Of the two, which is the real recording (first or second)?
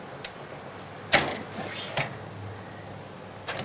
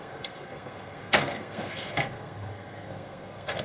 first